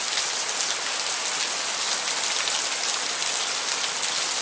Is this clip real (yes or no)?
yes